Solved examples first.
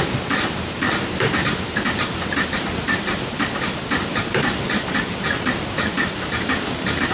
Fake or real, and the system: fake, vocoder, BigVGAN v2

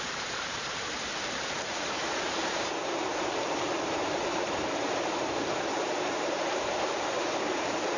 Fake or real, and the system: fake, vocoder, BigVGAN v2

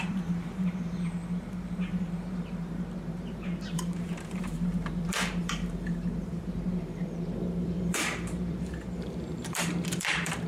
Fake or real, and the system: fake, vocoder, BigVGAN v2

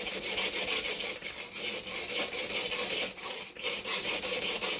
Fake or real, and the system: real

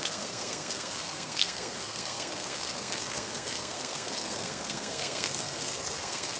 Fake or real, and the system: fake, codec, SNAC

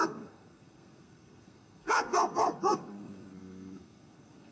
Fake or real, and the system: fake, codec, SNAC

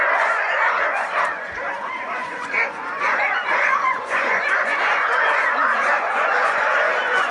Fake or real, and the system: fake, vocoder, Vocos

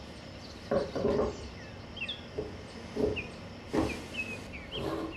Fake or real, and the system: real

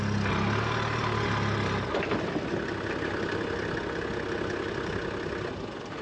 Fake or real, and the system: real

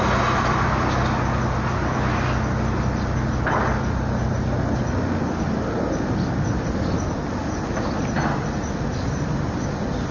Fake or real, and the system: real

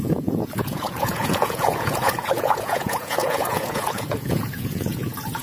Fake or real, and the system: fake, vocoder, Vocos